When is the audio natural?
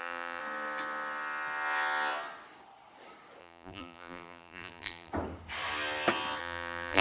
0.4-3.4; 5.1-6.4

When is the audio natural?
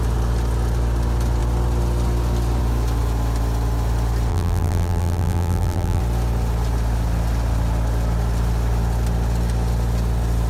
0.0-4.3; 6.0-10.5